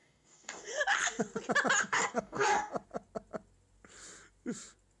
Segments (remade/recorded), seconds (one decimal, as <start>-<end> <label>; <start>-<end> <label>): 0.0-0.7 remade; 0.7-1.8 recorded; 1.8-2.7 remade; 2.7-5.0 recorded